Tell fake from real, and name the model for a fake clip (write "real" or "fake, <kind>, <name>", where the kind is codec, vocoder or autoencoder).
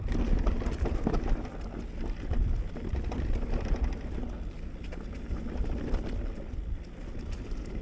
real